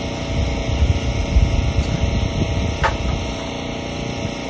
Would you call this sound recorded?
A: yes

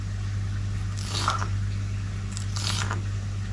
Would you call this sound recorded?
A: yes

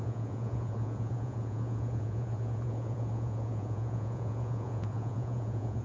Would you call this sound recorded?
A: no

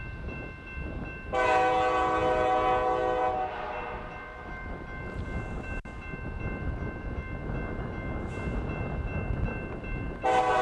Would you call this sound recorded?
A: yes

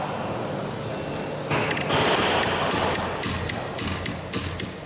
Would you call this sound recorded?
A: yes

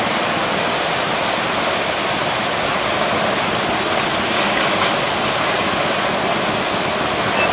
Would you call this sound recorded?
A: yes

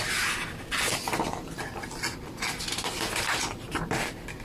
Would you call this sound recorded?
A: yes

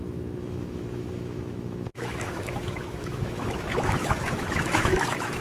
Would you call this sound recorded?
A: no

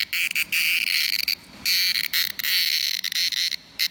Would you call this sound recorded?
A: yes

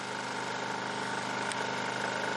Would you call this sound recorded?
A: yes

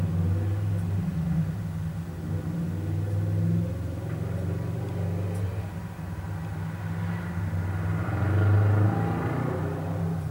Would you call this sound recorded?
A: yes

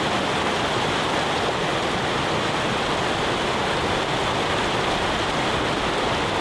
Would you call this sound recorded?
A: yes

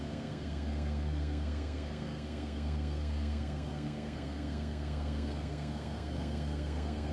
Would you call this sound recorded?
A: no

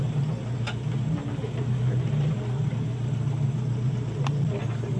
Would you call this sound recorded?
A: yes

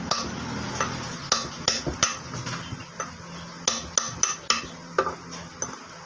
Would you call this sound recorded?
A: yes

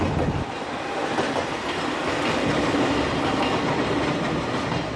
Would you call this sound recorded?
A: yes